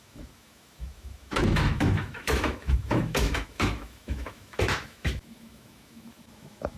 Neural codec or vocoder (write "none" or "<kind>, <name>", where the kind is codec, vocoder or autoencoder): autoencoder, DAC-VAE